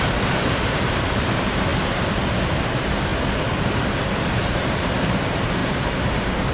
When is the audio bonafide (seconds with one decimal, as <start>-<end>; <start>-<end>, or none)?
1.7-2.5; 3.1-4.6